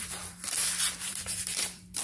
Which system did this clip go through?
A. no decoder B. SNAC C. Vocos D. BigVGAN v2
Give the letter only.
D